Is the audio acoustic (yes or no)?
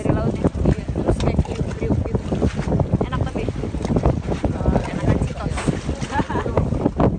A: yes